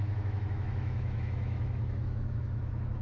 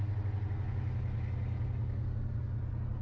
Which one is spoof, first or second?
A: first